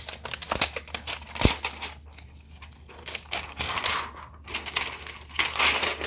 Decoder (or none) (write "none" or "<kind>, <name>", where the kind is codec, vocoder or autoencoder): none